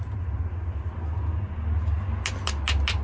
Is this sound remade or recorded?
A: recorded